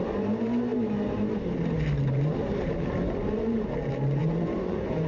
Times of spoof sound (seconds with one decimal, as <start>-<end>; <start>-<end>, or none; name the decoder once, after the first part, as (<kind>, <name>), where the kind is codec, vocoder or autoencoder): 4.2-5.1 (vocoder, Vocos)